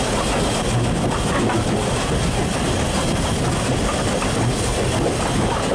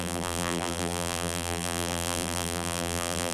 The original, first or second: first